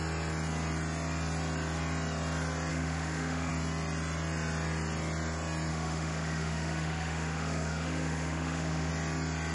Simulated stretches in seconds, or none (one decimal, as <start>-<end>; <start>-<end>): 2.7-3.5; 5.7-8.9